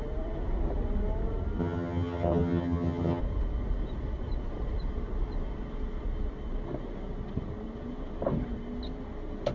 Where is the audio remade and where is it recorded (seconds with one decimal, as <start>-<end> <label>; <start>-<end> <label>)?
0.0-1.6 recorded; 1.6-3.2 remade; 3.2-9.5 recorded